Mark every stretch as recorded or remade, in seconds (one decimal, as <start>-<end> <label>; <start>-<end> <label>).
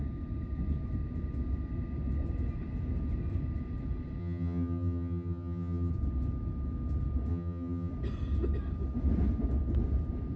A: 0.0-4.2 recorded; 4.2-5.9 remade; 5.9-7.3 recorded; 7.3-7.9 remade; 7.9-10.4 recorded